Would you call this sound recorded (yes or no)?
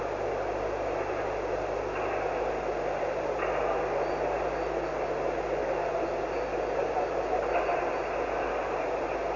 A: yes